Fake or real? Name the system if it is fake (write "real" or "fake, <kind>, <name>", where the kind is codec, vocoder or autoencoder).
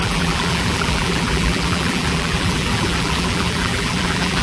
fake, vocoder, BigVGAN v2